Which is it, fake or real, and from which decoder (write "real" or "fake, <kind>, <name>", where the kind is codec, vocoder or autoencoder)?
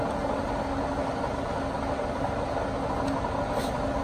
real